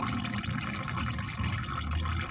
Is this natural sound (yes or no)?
yes